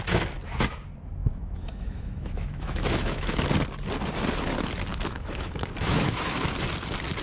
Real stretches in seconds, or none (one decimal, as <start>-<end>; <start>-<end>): 0.0-1.2; 3.5-4.9; 6.5-7.2